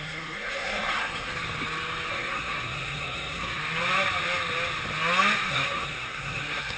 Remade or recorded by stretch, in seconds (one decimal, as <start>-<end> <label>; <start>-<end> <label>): 0.0-1.3 remade; 1.3-2.1 recorded; 2.1-3.6 remade; 3.6-5.5 recorded; 5.5-6.8 remade